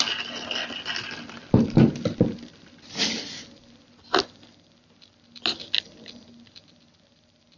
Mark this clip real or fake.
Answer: real